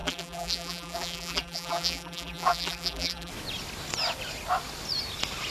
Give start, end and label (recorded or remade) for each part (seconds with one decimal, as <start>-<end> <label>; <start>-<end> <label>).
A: 0.0-3.3 remade; 3.3-5.5 recorded